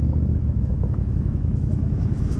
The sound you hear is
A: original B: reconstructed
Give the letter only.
B